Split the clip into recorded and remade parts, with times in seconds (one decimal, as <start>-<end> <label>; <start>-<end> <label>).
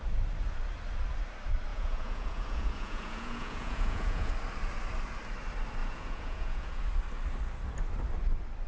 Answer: 0.0-1.7 recorded; 1.7-4.3 remade; 4.3-5.8 recorded; 5.8-6.8 remade; 6.8-8.7 recorded